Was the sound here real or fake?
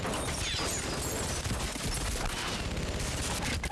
real